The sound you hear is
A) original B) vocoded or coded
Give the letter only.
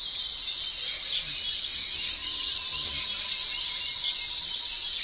A